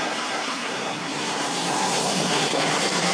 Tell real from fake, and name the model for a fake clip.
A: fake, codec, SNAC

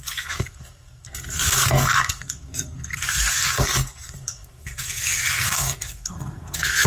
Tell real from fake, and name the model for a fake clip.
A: fake, codec, SNAC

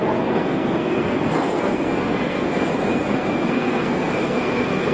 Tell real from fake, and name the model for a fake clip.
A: fake, codec, SNAC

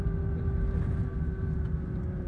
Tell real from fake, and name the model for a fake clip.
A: real